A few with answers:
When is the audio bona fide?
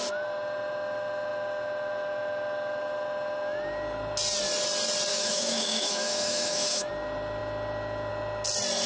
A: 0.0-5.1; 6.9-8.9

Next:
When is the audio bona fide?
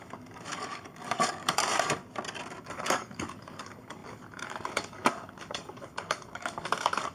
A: 2.0-2.6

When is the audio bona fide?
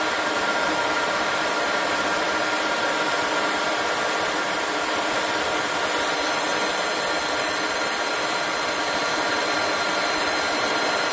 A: 0.0-11.1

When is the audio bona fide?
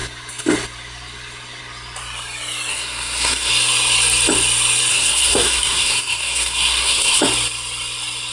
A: 0.0-2.7; 3.5-4.9; 7.2-8.3